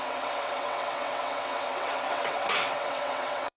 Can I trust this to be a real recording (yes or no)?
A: no